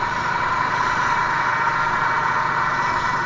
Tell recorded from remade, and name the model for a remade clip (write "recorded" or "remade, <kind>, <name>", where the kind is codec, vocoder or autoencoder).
recorded